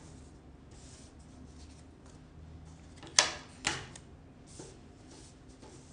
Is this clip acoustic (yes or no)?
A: yes